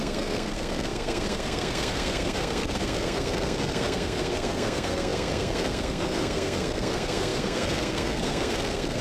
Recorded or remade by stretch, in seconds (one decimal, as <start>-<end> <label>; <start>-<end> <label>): 0.0-9.0 remade